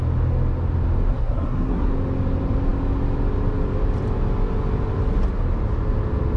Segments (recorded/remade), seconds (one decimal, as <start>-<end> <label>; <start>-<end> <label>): 0.0-1.1 recorded; 1.1-1.9 remade; 1.9-6.4 recorded